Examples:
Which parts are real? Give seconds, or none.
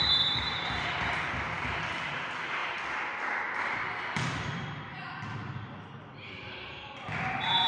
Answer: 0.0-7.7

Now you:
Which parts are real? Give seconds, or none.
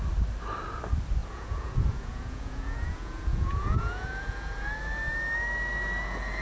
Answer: 0.0-1.2; 4.7-6.4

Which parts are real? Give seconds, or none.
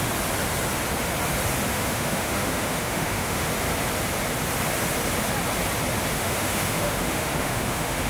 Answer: 0.0-1.7; 3.5-6.1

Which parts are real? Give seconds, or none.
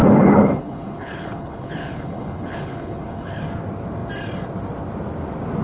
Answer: 3.4-5.6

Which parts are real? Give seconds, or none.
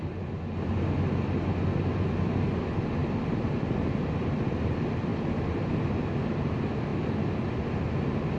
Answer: 0.0-8.4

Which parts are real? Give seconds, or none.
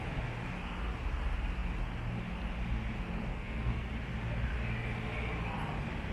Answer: 0.0-3.3; 3.9-6.1